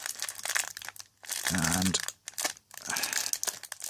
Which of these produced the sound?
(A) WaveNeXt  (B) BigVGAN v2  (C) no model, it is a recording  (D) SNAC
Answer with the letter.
C